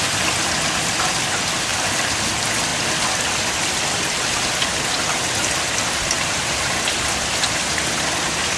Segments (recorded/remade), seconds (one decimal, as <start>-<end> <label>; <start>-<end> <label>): 0.0-1.7 recorded; 1.7-2.3 remade; 2.3-4.7 recorded; 4.7-5.2 remade; 5.2-8.6 recorded